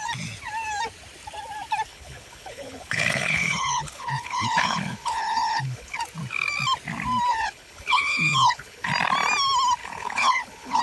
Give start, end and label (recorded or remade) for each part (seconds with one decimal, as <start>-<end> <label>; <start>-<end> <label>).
0.0-1.9 recorded; 1.9-6.0 remade; 6.0-7.3 recorded; 7.3-8.9 remade; 8.9-9.8 recorded; 9.8-10.8 remade